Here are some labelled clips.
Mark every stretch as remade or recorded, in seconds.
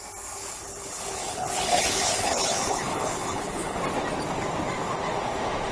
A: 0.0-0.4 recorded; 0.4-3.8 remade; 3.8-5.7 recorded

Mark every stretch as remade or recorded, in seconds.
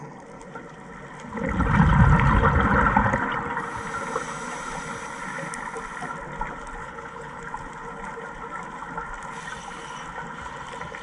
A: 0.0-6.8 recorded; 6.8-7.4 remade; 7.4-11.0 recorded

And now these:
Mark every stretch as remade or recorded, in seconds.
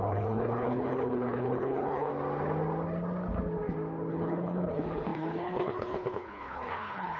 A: 0.0-2.1 remade; 2.1-4.1 recorded; 4.1-7.2 remade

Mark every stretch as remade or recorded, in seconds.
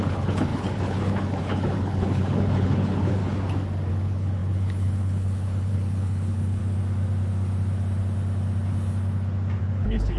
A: 0.0-3.2 remade; 3.2-3.9 recorded; 3.9-6.6 remade; 6.6-9.6 recorded; 9.6-10.2 remade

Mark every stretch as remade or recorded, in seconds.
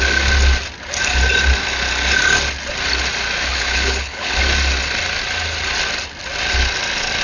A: 0.0-3.5 recorded; 3.5-4.4 remade; 4.4-7.2 recorded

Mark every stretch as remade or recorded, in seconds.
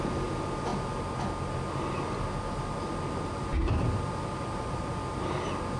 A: 0.0-5.8 recorded